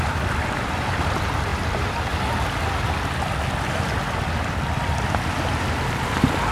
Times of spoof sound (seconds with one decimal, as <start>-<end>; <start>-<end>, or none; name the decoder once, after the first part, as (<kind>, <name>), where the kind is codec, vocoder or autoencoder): none